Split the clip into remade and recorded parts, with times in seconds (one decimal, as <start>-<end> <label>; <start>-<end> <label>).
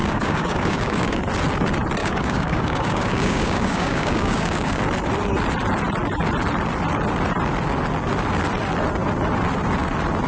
0.0-1.2 remade; 1.2-2.0 recorded; 2.0-4.8 remade; 4.8-10.3 recorded